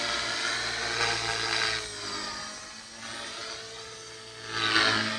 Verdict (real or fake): real